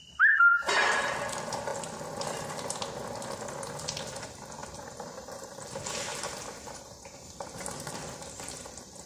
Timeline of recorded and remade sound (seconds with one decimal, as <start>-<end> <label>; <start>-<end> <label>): 0.0-1.7 remade; 1.7-3.8 recorded; 3.8-9.1 remade